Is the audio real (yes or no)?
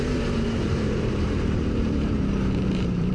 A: no